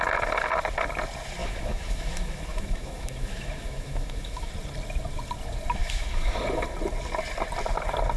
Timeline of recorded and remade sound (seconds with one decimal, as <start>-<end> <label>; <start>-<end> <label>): 0.0-1.4 recorded; 1.4-4.5 remade; 4.5-5.8 recorded; 5.8-6.4 remade; 6.4-8.2 recorded